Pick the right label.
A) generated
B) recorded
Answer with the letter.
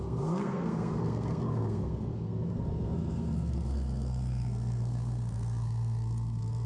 A